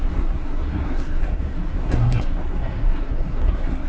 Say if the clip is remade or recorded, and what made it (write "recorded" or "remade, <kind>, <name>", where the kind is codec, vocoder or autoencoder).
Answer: remade, codec, SNAC